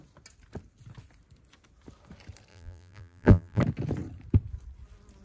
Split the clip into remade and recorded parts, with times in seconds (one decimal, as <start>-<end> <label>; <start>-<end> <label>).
0.0-2.5 recorded; 2.5-3.6 remade; 3.6-5.2 recorded